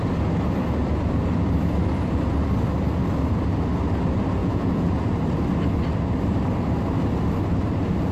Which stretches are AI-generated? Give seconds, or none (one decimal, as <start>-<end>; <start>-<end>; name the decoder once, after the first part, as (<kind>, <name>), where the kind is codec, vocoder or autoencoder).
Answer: 4.4-4.9 (vocoder, Vocos)